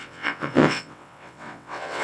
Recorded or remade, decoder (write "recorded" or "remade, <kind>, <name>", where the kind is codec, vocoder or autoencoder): remade, vocoder, WaveNeXt